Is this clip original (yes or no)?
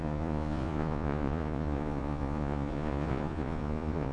no